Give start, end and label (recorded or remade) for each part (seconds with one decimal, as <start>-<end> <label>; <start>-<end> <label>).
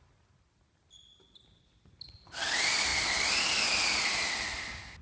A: 0.0-5.0 recorded